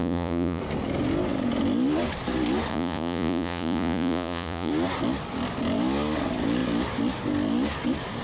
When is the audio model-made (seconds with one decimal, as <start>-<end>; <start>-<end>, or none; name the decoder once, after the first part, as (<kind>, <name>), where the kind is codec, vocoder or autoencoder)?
0.0-0.6 (vocoder, Vocos); 2.7-4.7